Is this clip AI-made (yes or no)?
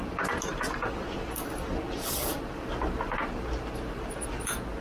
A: no